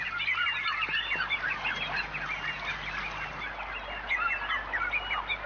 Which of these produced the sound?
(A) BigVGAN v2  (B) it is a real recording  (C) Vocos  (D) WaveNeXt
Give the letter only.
B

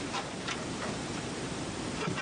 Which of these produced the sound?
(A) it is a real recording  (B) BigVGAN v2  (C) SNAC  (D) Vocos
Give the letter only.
B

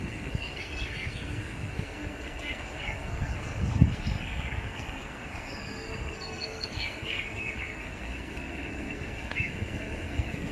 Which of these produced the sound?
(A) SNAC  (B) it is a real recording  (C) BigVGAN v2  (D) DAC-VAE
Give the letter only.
A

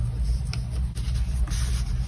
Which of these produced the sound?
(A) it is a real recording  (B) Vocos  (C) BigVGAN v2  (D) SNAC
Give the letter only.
A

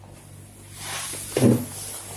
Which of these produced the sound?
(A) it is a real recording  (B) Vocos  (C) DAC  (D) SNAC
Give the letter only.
A